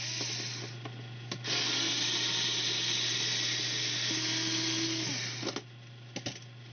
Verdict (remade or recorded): recorded